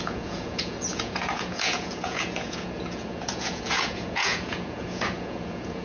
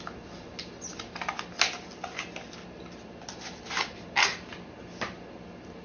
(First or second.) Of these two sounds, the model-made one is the first